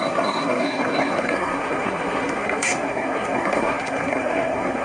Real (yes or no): no